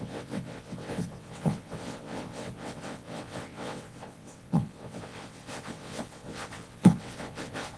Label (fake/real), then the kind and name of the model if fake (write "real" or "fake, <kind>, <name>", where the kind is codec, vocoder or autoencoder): fake, vocoder, WaveNeXt